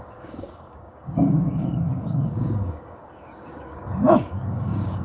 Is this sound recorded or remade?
remade